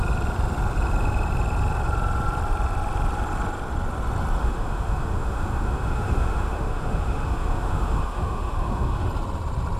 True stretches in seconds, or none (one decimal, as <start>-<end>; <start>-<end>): 0.0-4.4; 9.1-9.8